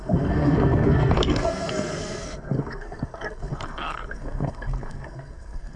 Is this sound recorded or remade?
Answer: remade